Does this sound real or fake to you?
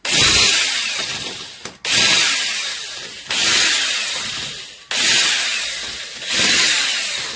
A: real